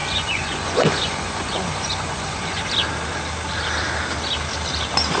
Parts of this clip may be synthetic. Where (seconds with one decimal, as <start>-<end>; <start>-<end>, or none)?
0.0-2.6